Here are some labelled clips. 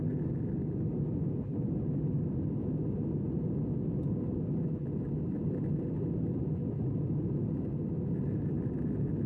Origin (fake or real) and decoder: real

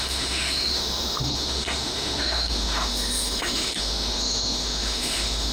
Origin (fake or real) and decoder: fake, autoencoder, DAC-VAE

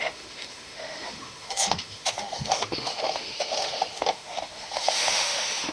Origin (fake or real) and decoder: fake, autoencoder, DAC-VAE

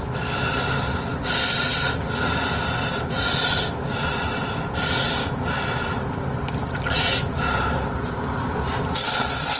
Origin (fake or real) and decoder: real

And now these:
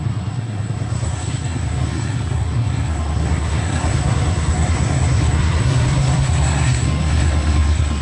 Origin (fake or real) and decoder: fake, codec, SNAC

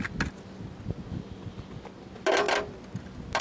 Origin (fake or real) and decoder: real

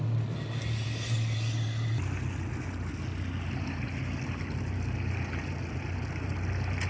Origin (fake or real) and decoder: real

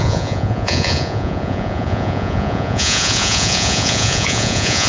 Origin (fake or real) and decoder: fake, vocoder, Vocos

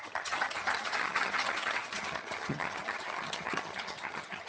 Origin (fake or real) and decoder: fake, vocoder, HiFi-GAN